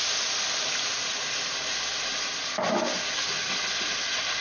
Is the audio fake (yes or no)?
no